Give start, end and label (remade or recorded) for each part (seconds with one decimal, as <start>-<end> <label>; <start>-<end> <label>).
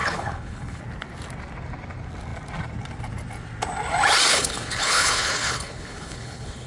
0.0-0.8 remade; 0.8-4.3 recorded; 4.3-6.7 remade